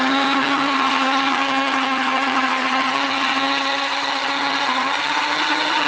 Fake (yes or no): yes